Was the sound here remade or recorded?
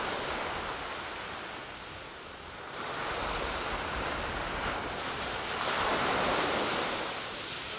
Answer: recorded